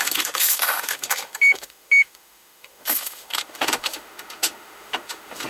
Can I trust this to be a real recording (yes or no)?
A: no